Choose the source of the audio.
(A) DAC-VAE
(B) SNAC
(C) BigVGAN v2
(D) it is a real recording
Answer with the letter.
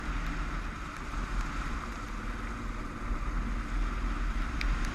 D